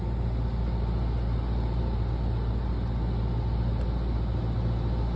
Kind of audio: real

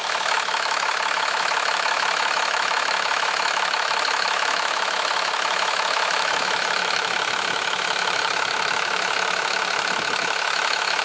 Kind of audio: fake